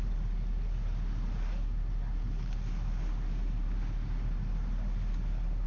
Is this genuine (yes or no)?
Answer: yes